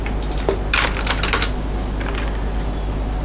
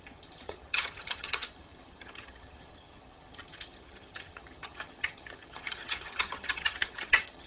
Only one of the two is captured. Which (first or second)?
first